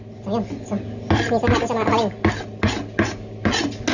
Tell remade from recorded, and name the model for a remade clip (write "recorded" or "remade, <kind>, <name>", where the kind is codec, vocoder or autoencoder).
recorded